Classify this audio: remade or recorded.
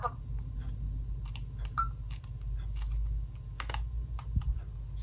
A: recorded